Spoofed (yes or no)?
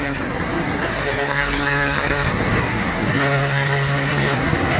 yes